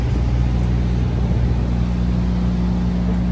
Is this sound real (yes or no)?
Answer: yes